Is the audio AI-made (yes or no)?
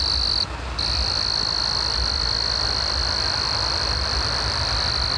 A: no